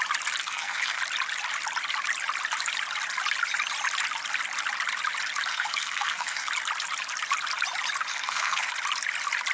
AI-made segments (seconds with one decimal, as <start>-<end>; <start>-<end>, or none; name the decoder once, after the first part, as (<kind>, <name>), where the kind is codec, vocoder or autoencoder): 0.4-1.0 (codec, SNAC); 5.5-6.5; 8.1-8.7